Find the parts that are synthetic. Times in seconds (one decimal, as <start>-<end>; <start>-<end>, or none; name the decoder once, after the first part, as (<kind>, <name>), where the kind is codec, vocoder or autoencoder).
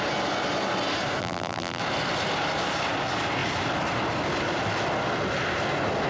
1.2-1.8 (vocoder, BigVGAN v2)